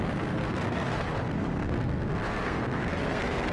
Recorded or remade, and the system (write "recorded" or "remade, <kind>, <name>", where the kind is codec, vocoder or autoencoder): remade, codec, SNAC